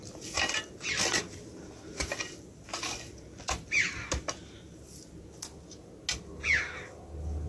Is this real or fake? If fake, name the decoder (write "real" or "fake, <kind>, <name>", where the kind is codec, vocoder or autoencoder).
real